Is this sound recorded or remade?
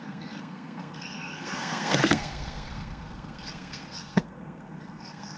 remade